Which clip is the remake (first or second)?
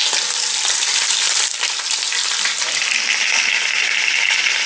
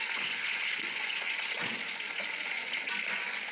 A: second